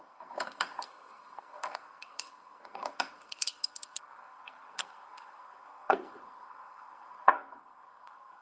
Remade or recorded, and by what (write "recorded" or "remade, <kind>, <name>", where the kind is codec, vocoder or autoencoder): remade, codec, SNAC